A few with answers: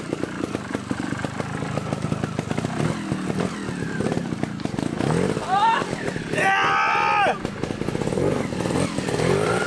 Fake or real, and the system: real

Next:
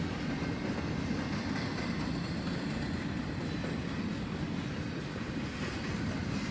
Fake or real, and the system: real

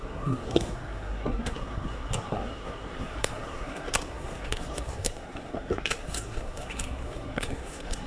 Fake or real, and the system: fake, codec, SNAC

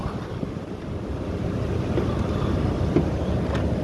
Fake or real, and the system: real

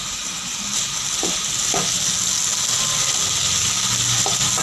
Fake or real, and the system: real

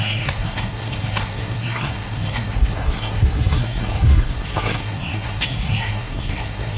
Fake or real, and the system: fake, codec, SNAC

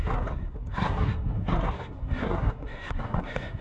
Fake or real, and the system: fake, codec, SNAC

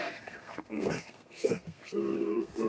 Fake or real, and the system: fake, codec, SNAC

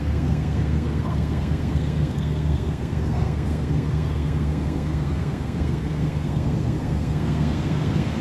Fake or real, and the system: fake, codec, SNAC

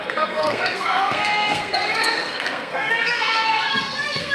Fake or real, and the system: fake, codec, SNAC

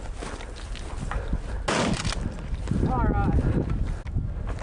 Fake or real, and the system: real